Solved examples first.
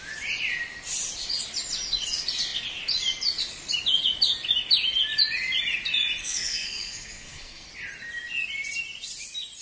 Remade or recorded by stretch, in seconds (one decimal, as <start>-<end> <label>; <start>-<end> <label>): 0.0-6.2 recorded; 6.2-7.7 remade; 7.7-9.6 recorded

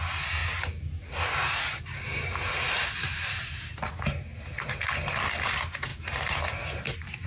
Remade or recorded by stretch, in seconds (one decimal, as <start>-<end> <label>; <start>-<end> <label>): 0.0-7.3 recorded

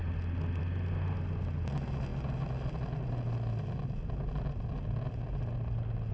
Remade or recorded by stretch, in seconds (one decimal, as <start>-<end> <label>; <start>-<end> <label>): 0.0-6.1 recorded

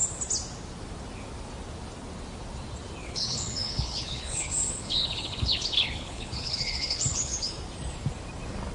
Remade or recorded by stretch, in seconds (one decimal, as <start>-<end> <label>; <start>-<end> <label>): 0.0-3.0 recorded; 3.0-7.5 remade; 7.5-8.7 recorded

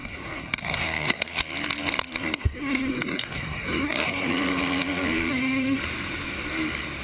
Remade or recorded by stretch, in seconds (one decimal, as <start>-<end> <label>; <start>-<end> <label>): 0.0-1.4 remade; 1.4-2.2 recorded; 2.2-4.3 remade; 4.3-5.3 recorded; 5.3-5.8 remade; 5.8-7.0 recorded

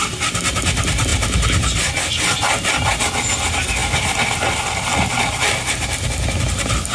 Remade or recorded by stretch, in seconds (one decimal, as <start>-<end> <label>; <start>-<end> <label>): 0.0-6.9 recorded

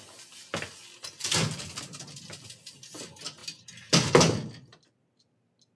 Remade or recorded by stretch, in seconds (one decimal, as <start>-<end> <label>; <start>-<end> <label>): 0.0-1.2 recorded; 1.2-2.3 remade; 2.3-5.8 recorded